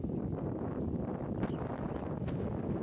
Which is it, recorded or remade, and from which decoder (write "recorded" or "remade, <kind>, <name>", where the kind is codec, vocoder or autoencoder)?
recorded